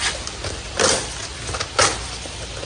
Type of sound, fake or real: real